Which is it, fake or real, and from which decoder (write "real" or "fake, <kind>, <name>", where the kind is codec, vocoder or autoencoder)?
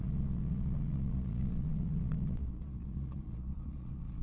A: fake, vocoder, Vocos